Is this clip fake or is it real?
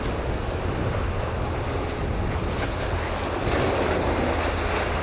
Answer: real